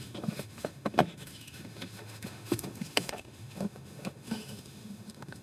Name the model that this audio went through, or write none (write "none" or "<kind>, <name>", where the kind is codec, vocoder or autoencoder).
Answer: autoencoder, DAC-VAE